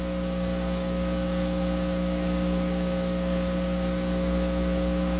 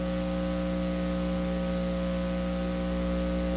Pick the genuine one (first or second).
second